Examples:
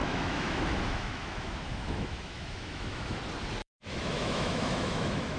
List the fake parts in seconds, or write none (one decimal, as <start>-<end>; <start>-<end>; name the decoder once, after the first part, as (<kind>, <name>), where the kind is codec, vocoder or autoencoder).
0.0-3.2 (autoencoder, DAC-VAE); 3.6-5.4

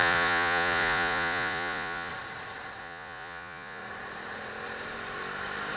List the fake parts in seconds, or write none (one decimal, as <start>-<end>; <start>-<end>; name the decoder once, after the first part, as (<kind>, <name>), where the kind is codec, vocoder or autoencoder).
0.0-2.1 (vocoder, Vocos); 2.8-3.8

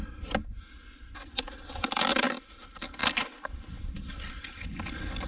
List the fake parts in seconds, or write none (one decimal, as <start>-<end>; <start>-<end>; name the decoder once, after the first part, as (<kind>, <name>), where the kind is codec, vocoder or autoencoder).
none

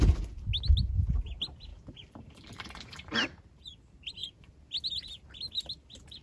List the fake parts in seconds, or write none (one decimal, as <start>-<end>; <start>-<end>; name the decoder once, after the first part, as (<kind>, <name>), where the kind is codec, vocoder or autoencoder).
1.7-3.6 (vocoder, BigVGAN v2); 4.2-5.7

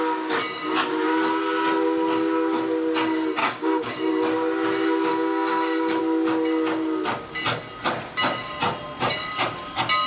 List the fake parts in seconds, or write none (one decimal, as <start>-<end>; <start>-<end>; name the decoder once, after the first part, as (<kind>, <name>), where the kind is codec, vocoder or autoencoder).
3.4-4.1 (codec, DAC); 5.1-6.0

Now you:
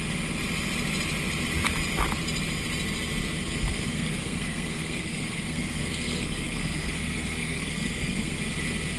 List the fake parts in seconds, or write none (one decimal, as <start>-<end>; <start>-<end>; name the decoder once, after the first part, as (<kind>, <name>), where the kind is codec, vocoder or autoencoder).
3.9-8.4 (codec, SNAC)